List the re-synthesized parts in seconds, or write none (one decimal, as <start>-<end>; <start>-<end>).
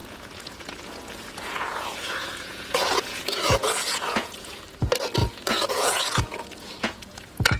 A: 0.0-4.6; 5.2-7.6